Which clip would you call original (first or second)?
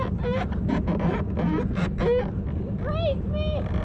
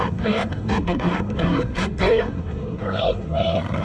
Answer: first